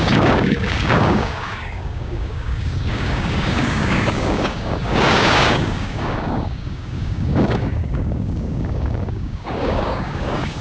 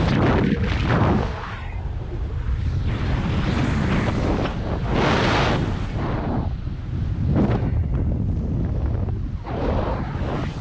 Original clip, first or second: second